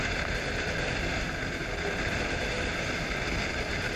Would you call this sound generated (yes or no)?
no